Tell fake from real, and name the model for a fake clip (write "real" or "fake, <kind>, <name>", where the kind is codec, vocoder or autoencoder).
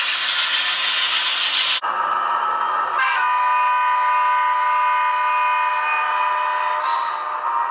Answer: real